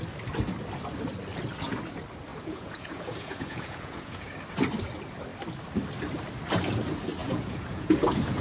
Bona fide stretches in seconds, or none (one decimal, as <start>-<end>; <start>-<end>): 0.0-2.3; 4.3-7.2